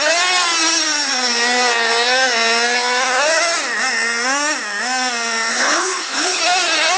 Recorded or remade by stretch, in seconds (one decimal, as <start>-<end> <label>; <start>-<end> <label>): 0.0-5.5 recorded; 5.5-6.4 remade; 6.4-7.0 recorded